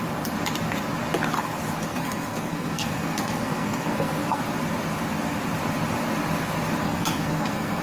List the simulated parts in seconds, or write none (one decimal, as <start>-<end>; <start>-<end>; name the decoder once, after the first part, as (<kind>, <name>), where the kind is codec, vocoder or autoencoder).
1.9-4.4 (codec, SNAC); 6.8-7.8